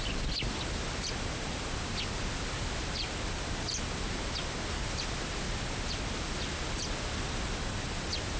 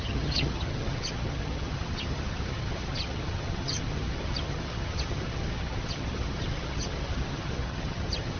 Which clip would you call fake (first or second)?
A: second